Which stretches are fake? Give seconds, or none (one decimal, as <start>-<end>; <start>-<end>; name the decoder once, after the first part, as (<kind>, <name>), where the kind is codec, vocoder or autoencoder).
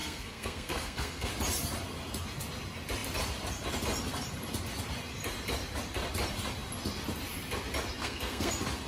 0.0-1.3 (codec, SNAC); 8.0-8.5